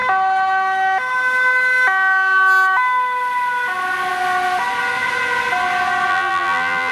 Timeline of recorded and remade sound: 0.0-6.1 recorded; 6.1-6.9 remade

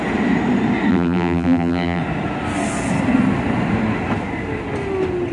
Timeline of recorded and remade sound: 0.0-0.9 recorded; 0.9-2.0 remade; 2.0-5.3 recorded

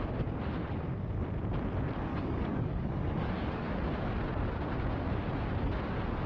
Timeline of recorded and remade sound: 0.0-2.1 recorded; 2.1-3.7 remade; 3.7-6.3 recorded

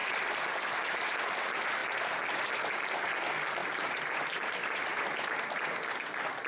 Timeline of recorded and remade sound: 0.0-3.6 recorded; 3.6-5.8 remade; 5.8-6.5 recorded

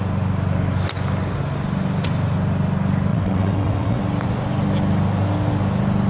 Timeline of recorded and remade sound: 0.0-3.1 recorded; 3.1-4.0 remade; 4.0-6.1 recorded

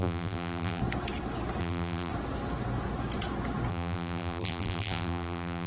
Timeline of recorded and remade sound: 0.0-0.8 remade; 0.8-1.6 recorded; 1.6-2.1 remade; 2.1-3.7 recorded; 3.7-5.7 remade

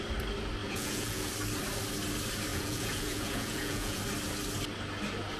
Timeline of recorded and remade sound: 0.0-0.6 recorded; 0.6-1.3 remade; 1.3-2.5 recorded; 2.5-4.0 remade; 4.0-5.4 recorded